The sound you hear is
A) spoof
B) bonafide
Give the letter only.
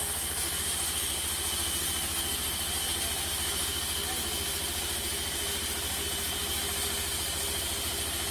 B